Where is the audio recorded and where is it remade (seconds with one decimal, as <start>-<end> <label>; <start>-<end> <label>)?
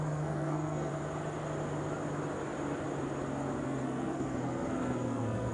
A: 0.0-0.9 remade; 0.9-3.6 recorded; 3.6-5.5 remade